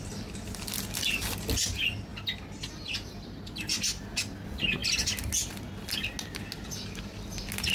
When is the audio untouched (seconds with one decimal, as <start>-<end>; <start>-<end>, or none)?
0.0-7.7